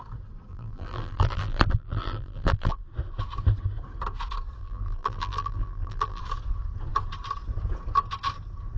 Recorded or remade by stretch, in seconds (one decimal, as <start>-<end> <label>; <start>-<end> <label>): 0.0-0.5 recorded; 0.5-2.8 remade; 2.8-4.6 recorded; 4.6-6.2 remade; 6.2-8.8 recorded